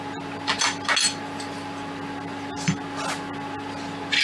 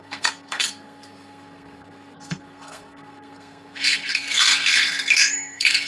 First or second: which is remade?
second